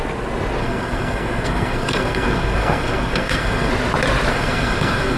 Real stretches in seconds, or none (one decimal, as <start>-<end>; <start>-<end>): 0.0-0.6; 3.7-4.3